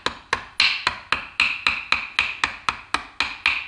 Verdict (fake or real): real